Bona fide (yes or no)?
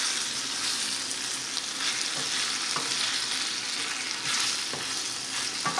yes